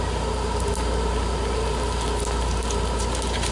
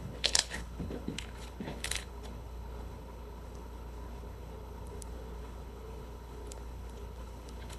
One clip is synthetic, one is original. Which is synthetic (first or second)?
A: second